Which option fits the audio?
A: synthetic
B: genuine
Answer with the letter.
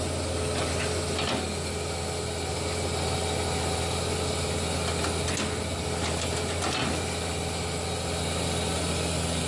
B